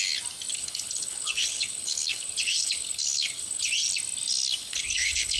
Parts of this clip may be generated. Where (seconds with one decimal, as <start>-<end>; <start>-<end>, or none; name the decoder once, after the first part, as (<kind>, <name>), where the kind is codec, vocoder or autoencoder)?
0.5-3.7 (codec, HILCodec); 4.6-5.4